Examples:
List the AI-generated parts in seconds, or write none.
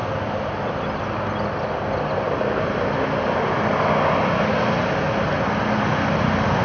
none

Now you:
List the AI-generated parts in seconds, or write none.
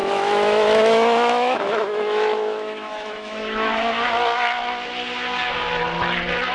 0.0-3.9 (autoencoder, DAC-VAE)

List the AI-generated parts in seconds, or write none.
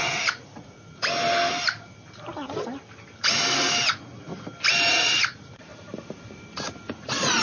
0.0-1.0 (vocoder, Vocos); 3.9-4.3; 4.9-5.7; 6.9-7.4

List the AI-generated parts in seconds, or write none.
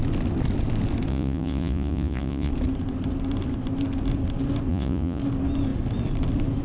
1.1-2.5 (vocoder, Vocos); 4.7-5.2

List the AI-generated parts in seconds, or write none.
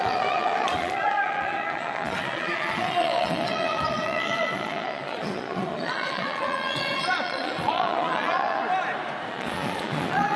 0.0-8.6 (vocoder, Vocos); 9.3-10.4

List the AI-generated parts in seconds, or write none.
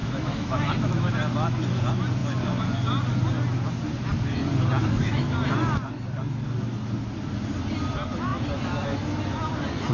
0.0-1.1 (autoencoder, DAC-VAE); 4.8-5.3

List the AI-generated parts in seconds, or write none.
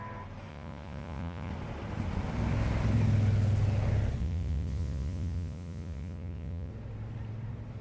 0.5-1.5 (vocoder, Vocos); 4.2-6.7